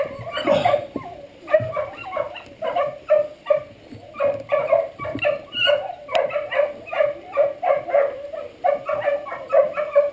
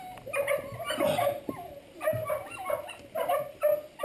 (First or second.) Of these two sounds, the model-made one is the first